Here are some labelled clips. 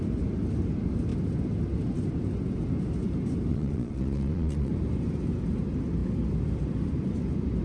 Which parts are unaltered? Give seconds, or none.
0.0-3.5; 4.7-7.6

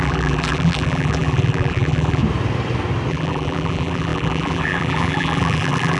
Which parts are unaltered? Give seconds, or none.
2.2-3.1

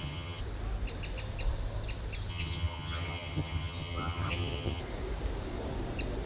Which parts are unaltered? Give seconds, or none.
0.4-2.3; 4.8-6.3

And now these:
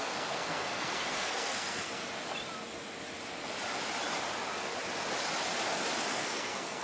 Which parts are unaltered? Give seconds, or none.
2.0-6.1

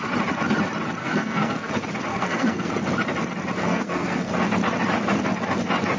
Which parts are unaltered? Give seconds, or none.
0.0-1.0; 1.7-2.1; 2.7-3.6; 4.3-6.0

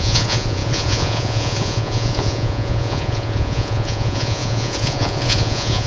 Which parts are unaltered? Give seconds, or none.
none